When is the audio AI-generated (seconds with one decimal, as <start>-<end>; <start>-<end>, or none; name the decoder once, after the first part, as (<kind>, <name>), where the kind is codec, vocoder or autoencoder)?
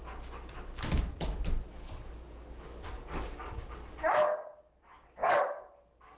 1.7-4.8 (codec, DAC); 5.2-6.2